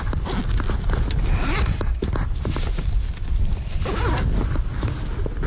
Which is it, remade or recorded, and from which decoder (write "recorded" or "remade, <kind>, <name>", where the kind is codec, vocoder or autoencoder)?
recorded